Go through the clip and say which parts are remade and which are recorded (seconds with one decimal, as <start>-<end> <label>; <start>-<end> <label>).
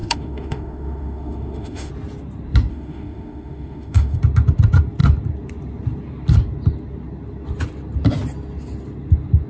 0.0-1.9 remade; 1.9-2.7 recorded; 2.7-4.2 remade; 4.2-9.5 recorded